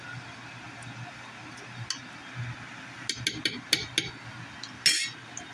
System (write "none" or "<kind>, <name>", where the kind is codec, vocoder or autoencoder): none